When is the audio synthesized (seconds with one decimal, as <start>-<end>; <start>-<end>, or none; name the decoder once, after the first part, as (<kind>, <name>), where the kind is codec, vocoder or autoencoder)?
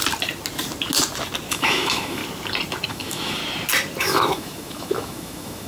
1.5-2.2 (autoencoder, DAC-VAE); 2.9-3.4; 4.0-5.7